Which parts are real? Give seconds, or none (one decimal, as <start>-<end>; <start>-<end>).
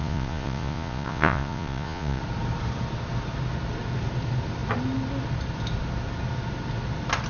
2.2-7.3